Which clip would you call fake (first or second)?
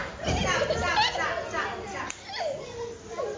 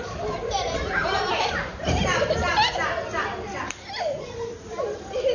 second